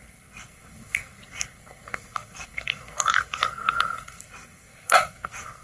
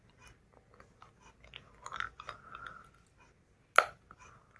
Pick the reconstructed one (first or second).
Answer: first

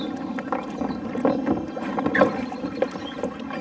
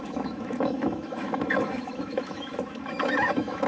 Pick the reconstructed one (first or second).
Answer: second